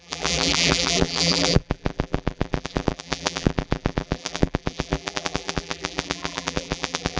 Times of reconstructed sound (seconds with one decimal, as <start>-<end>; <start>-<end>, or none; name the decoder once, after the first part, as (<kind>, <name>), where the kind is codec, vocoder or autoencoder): 0.0-7.2 (vocoder, BigVGAN v2)